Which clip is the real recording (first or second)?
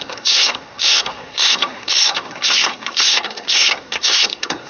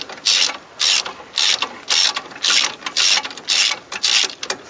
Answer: second